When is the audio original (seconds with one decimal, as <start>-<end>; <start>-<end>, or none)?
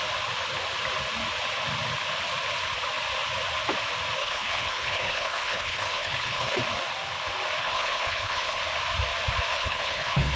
0.0-4.2; 6.6-7.6; 8.6-9.5